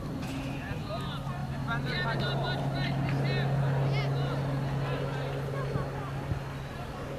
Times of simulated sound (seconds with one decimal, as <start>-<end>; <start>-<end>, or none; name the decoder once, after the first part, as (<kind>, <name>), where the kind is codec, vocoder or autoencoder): 1.4-2.2 (vocoder, BigVGAN v2)

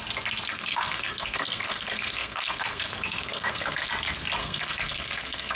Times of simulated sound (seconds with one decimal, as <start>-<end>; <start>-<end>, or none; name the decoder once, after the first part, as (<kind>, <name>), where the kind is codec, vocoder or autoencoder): 0.5-3.9 (codec, SNAC); 4.4-5.6

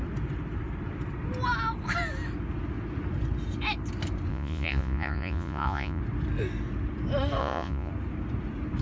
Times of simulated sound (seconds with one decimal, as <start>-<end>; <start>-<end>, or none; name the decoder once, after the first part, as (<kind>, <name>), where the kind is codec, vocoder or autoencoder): 4.3-6.0 (vocoder, Vocos); 7.4-7.9

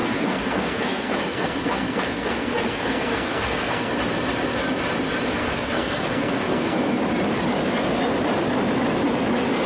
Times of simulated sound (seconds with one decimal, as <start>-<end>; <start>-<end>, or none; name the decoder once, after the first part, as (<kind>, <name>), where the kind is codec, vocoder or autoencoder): 0.0-3.9 (codec, SNAC); 5.4-7.0

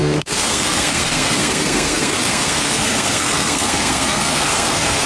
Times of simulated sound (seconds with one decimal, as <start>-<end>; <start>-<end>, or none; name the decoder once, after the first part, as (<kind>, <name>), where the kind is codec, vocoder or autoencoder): 0.0-5.1 (codec, SNAC)

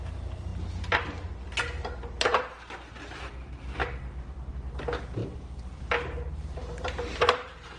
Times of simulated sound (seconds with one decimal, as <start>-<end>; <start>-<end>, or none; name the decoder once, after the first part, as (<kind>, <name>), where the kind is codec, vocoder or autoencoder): none

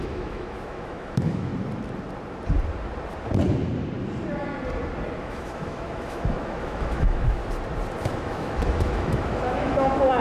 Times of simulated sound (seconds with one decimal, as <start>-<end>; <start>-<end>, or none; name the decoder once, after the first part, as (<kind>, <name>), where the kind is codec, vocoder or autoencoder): 0.0-1.5 (autoencoder, DAC-VAE); 5.2-7.4; 8.0-10.2

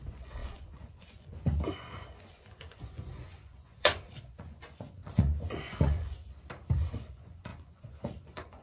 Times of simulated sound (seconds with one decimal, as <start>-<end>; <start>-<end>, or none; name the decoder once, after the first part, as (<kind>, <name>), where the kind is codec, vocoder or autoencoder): 0.0-6.2 (vocoder, Vocos); 6.9-8.6